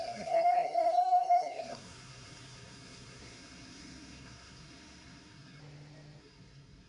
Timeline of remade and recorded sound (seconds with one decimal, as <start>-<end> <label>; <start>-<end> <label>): 0.0-5.6 remade; 5.6-6.2 recorded; 6.2-6.9 remade

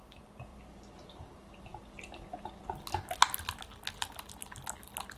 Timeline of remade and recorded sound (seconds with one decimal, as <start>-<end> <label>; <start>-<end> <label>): 0.0-0.5 recorded; 0.5-1.1 remade; 1.1-5.2 recorded